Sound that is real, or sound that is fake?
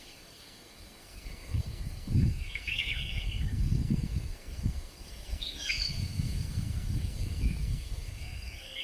fake